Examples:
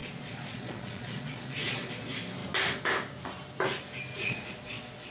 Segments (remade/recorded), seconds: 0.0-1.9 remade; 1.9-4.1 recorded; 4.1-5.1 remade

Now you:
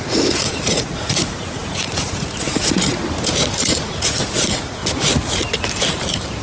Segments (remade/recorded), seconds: 0.0-3.0 remade; 3.0-3.6 recorded; 3.6-4.8 remade; 4.8-6.4 recorded

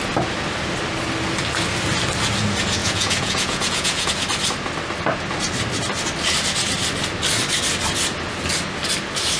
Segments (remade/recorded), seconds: 0.0-2.8 recorded; 2.8-4.1 remade; 4.1-9.4 recorded

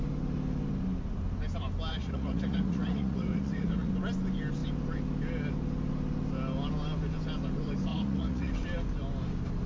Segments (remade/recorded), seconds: 0.0-1.9 recorded; 1.9-3.9 remade; 3.9-7.9 recorded; 7.9-8.5 remade; 8.5-9.7 recorded

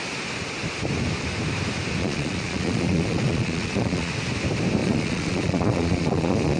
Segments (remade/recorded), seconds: 0.0-2.0 recorded; 2.0-4.1 remade; 4.1-4.8 recorded; 4.8-6.6 remade

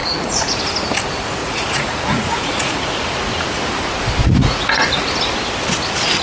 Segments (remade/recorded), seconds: 0.0-0.6 remade; 0.6-1.4 recorded; 1.4-3.0 remade; 3.0-4.2 recorded; 4.2-5.1 remade; 5.1-6.2 recorded

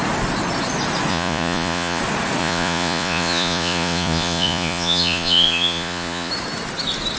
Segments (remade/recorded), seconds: 0.0-1.1 recorded; 1.1-2.0 remade; 2.0-2.4 recorded; 2.4-6.3 remade; 6.3-7.2 recorded

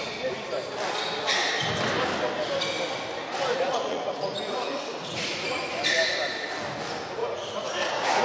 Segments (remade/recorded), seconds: 0.0-3.5 recorded; 3.5-5.6 remade; 5.6-7.2 recorded; 7.2-8.2 remade